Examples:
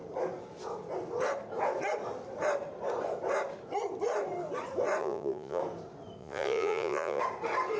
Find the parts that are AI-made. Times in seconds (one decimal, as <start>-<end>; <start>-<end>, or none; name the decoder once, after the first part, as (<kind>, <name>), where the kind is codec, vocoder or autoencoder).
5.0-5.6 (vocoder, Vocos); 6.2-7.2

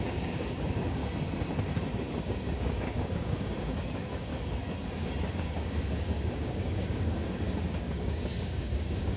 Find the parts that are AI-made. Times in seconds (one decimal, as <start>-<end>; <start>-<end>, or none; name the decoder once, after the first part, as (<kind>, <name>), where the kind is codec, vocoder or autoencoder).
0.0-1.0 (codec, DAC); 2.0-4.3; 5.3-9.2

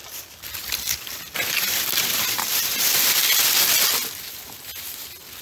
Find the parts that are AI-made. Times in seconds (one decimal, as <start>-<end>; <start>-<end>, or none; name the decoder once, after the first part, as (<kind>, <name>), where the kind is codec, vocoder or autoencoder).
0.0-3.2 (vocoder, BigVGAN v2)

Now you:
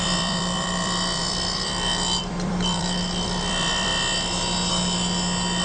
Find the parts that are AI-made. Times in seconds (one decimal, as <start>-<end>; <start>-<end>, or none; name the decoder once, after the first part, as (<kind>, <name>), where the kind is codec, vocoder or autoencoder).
0.0-3.9 (vocoder, BigVGAN v2)

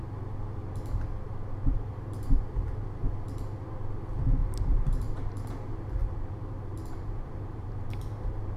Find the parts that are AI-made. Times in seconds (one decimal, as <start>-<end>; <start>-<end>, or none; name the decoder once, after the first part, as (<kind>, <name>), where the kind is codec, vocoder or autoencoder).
0.6-2.4 (vocoder, BigVGAN v2); 4.4-5.5; 6.0-8.2